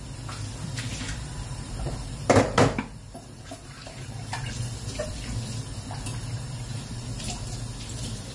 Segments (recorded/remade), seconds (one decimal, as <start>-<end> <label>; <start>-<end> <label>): 0.0-0.9 recorded; 0.9-5.1 remade; 5.1-6.1 recorded; 6.1-7.1 remade; 7.1-8.3 recorded